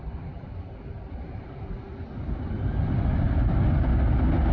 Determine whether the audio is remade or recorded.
recorded